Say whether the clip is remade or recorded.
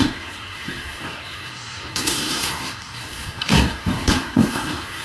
remade